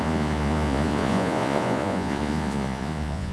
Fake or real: fake